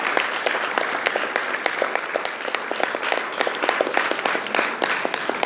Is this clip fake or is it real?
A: real